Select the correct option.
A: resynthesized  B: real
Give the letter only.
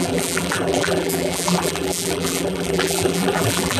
A